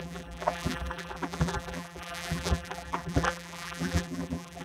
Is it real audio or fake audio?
fake